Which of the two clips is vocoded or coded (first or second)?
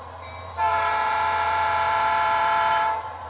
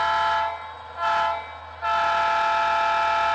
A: first